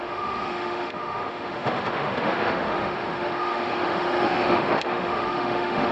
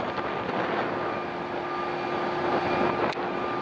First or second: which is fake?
first